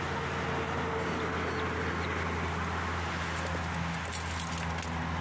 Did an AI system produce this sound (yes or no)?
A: no